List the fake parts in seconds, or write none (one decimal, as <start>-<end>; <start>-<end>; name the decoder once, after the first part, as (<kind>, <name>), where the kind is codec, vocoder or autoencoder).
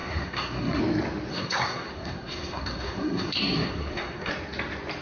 0.0-0.8 (codec, SNAC); 1.3-4.3